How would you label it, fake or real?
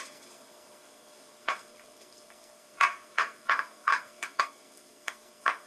fake